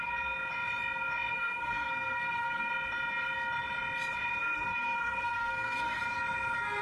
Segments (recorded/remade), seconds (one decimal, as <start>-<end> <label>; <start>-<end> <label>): 0.0-1.3 recorded; 1.3-2.7 remade; 2.7-4.4 recorded; 4.4-6.0 remade; 6.0-6.8 recorded